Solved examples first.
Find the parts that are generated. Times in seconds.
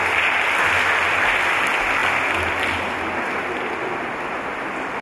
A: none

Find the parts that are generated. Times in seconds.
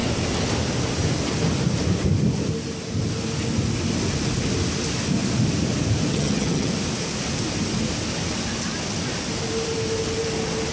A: 6.1-6.7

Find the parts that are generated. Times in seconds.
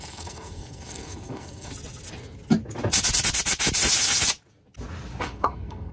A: 0.0-1.7; 5.2-5.9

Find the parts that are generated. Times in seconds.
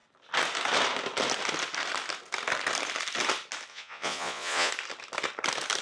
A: 3.7-4.7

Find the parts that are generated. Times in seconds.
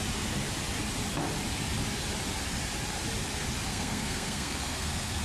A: 3.7-5.2